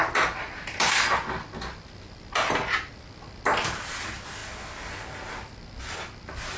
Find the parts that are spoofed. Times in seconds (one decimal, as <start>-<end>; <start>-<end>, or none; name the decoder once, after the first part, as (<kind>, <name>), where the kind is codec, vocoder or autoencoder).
none